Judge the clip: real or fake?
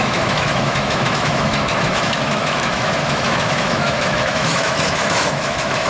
fake